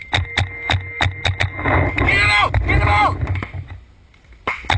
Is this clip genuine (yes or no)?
yes